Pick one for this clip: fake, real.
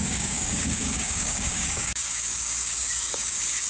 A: fake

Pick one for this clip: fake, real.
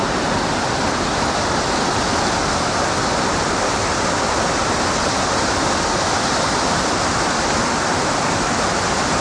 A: real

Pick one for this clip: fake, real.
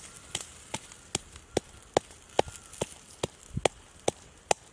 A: real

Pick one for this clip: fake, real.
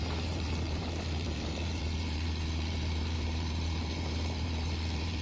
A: fake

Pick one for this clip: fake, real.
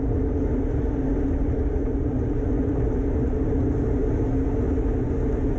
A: real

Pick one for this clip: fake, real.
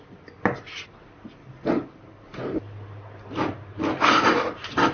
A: real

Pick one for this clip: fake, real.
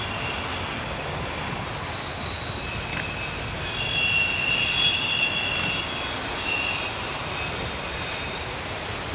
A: real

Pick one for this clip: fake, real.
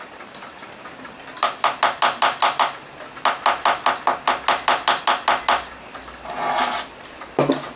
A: real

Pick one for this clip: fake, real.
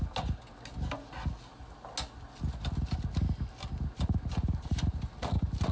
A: real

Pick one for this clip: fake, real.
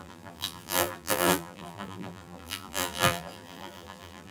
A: fake